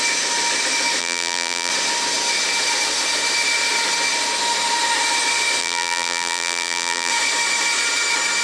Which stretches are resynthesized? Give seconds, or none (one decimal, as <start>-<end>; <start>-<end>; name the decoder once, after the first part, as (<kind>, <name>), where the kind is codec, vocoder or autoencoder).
1.0-1.7 (vocoder, BigVGAN v2); 5.6-7.1